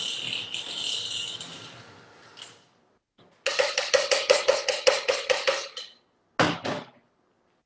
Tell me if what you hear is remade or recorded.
recorded